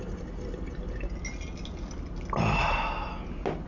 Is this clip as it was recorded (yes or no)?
yes